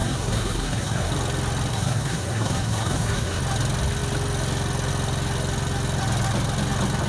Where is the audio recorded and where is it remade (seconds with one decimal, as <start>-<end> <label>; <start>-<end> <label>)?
0.0-1.1 remade; 1.1-1.7 recorded; 1.7-3.4 remade; 3.4-7.1 recorded